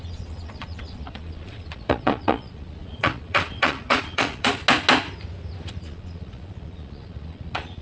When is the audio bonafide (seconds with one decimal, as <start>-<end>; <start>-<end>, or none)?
4.6-5.7